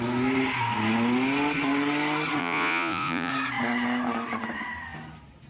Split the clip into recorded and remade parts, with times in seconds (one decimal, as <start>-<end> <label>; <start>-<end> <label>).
0.0-2.4 recorded; 2.4-3.3 remade; 3.3-5.5 recorded